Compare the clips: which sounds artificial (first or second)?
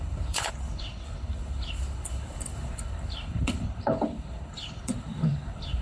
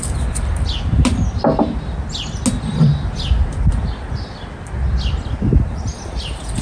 first